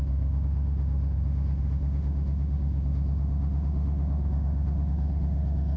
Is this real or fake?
fake